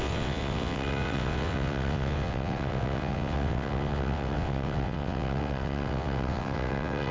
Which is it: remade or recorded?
remade